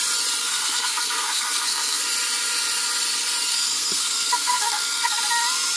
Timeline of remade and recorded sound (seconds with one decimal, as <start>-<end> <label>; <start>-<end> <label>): 0.0-0.4 recorded; 0.4-2.0 remade; 2.0-3.5 recorded; 3.5-5.2 remade; 5.2-5.8 recorded